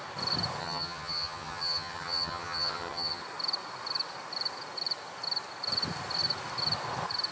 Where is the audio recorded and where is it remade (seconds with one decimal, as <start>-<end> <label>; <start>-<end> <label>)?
0.0-0.6 recorded; 0.6-3.2 remade; 3.2-7.3 recorded